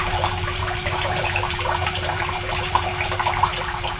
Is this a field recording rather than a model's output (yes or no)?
no